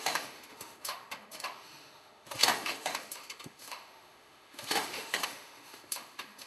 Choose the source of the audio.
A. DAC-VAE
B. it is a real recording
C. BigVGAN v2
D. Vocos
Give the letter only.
A